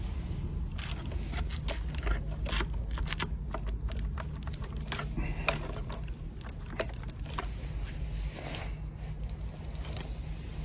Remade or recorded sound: recorded